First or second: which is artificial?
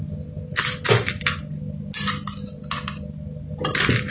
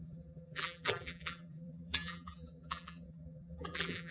second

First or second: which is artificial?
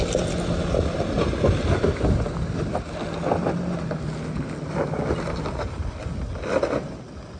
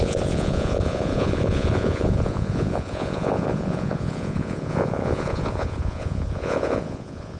second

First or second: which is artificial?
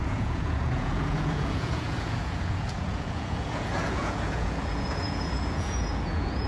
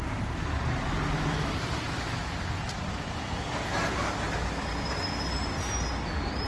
first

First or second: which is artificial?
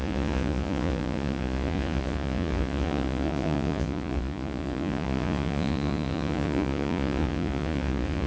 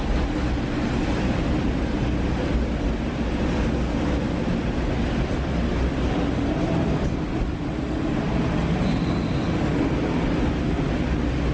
first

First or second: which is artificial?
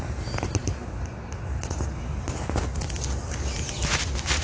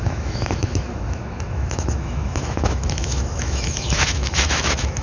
second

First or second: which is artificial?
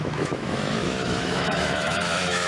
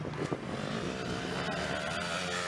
first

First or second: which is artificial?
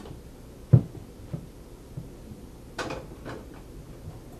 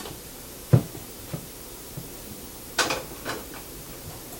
second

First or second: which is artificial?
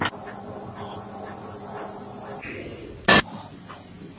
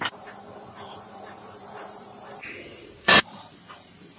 second